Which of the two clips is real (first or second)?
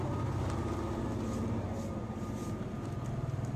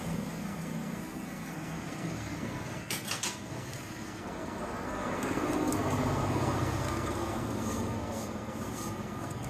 first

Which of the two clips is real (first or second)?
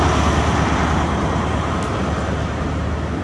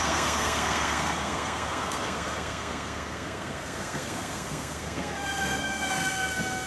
first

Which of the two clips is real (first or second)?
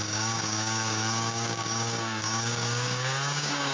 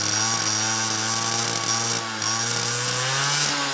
second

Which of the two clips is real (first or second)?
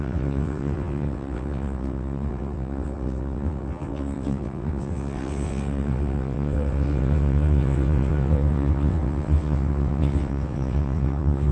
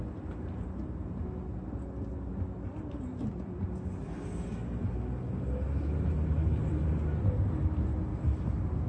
second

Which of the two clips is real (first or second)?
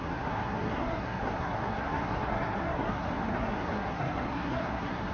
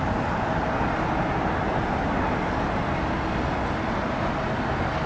second